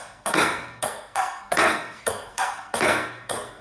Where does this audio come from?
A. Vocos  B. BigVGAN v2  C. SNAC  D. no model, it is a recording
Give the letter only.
C